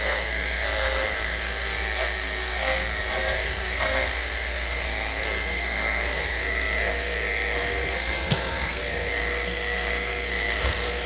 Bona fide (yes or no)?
no